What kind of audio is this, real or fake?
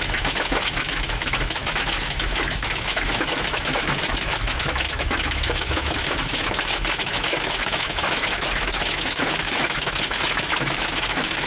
fake